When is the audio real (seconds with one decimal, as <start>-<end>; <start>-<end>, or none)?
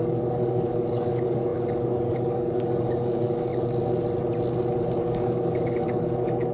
3.5-5.0